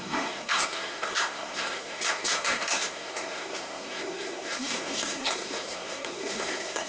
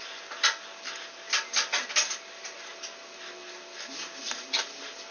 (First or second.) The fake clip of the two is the first